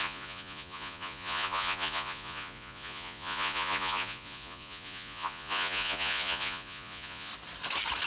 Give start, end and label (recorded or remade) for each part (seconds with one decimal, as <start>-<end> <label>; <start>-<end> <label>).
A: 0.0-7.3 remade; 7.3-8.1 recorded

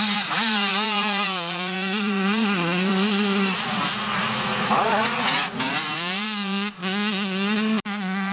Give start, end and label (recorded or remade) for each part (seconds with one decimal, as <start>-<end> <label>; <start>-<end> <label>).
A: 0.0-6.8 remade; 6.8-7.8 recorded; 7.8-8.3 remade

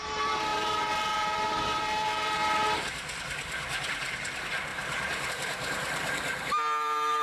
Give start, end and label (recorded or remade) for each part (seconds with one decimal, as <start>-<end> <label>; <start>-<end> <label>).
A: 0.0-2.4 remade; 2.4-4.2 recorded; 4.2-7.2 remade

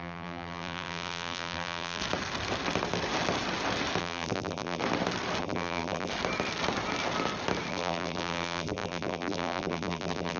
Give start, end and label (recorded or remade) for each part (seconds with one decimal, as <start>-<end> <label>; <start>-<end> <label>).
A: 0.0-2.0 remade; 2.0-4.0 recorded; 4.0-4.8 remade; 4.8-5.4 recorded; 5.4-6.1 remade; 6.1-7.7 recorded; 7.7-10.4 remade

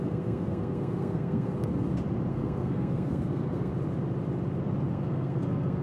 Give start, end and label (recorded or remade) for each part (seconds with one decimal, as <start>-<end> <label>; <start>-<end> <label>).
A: 0.0-1.7 remade; 1.7-2.3 recorded; 2.3-3.7 remade; 3.7-4.9 recorded; 4.9-5.8 remade